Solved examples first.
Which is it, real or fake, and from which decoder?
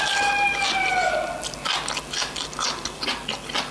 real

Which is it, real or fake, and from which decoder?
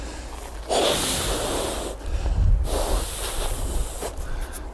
real